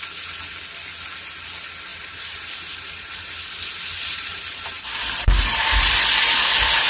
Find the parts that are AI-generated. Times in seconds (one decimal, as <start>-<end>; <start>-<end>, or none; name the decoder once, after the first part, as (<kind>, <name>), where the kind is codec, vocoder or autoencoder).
1.9-6.0 (vocoder, BigVGAN v2)